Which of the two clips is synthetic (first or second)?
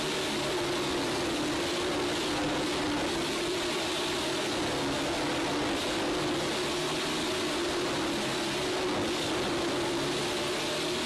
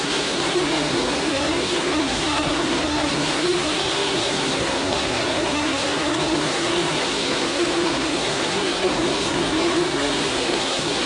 second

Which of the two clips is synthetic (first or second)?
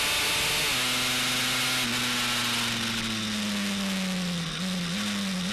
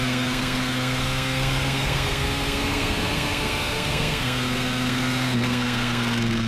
second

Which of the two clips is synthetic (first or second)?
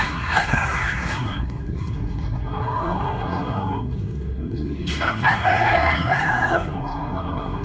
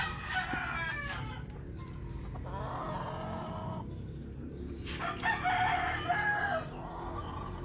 first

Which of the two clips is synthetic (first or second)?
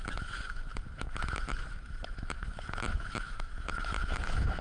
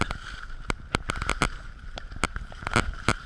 first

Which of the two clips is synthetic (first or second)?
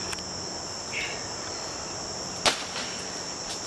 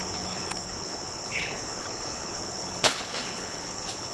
second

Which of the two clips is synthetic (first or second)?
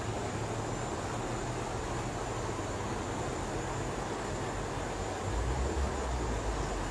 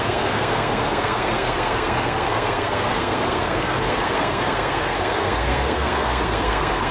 second